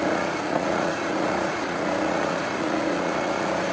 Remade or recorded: remade